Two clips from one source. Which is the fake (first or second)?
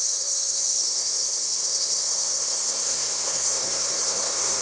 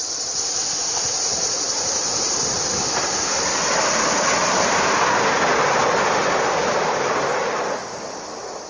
first